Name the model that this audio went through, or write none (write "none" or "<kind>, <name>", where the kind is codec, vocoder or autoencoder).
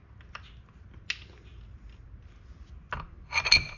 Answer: none